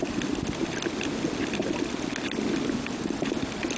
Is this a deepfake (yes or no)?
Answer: no